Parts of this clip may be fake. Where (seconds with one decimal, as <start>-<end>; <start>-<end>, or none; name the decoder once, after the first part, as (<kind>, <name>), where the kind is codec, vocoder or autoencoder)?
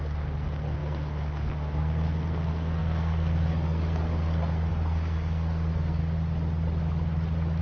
0.0-6.0 (codec, SNAC)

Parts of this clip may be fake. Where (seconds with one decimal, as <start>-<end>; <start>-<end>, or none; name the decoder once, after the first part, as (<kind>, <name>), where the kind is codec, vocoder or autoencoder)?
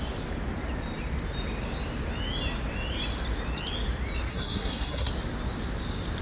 4.3-5.1 (codec, SNAC)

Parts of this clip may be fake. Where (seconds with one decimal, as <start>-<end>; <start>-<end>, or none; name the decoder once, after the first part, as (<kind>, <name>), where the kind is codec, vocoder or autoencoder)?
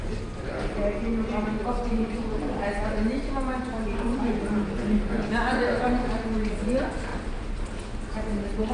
none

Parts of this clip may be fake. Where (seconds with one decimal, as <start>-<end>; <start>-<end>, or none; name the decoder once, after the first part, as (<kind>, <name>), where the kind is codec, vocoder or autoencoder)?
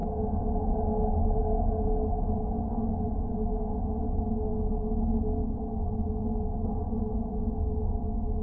none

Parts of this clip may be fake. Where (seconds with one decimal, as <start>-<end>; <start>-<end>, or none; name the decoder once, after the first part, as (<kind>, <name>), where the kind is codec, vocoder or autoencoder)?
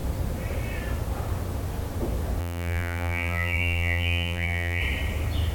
2.4-4.8 (vocoder, BigVGAN v2)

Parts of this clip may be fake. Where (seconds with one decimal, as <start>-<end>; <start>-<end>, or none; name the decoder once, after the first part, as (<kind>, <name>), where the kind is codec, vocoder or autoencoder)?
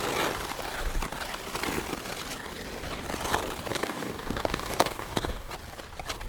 3.7-5.5 (codec, DAC)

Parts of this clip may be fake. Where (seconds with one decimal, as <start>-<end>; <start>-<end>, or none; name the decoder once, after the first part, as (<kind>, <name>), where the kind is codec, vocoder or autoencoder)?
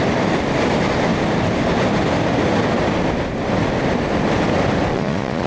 4.9-5.5 (vocoder, Vocos)